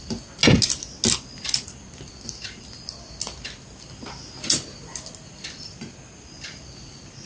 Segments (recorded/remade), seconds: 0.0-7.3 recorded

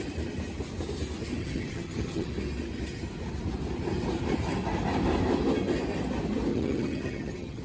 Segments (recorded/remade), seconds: 0.0-1.4 recorded; 1.4-2.3 remade; 2.3-6.5 recorded; 6.5-7.6 remade

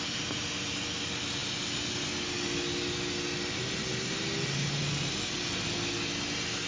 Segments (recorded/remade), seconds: 0.0-6.7 recorded

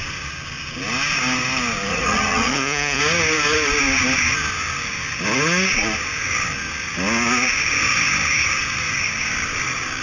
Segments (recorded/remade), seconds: 0.0-1.9 recorded; 1.9-3.0 remade; 3.0-10.0 recorded

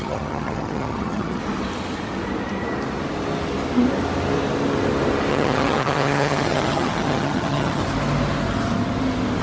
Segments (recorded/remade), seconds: 0.0-1.4 remade; 1.4-5.3 recorded; 5.3-7.8 remade; 7.8-9.4 recorded